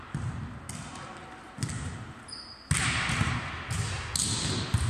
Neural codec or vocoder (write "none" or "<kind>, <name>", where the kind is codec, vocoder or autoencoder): none